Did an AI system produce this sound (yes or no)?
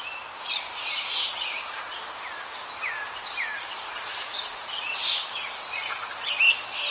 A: no